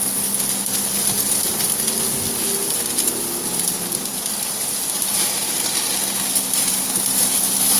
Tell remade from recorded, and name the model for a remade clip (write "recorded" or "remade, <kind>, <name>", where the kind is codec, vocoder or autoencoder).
recorded